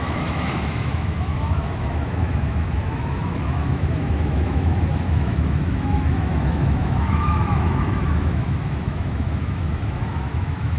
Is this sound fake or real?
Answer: fake